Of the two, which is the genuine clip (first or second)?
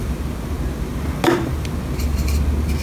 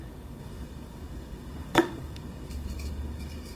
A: first